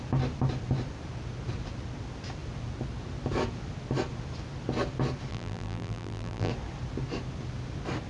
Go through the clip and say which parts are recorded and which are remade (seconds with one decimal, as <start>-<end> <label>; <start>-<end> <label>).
0.0-5.3 recorded; 5.3-6.5 remade; 6.5-8.1 recorded